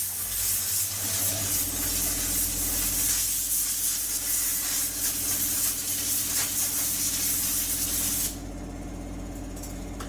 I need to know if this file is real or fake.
real